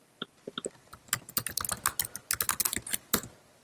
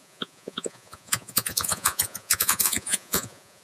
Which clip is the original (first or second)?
first